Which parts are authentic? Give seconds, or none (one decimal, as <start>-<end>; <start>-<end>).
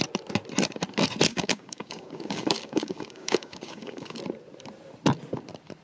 0.0-1.3; 4.2-5.8